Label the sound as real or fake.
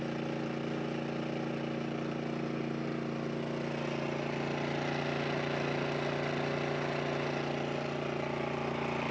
real